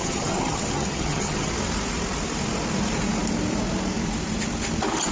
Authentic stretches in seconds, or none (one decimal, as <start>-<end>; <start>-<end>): 1.5-5.1